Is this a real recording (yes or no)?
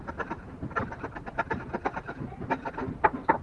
yes